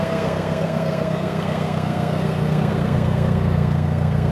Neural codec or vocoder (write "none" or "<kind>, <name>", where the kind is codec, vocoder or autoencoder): codec, SNAC